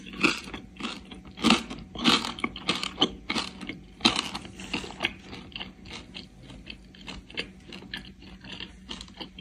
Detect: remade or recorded recorded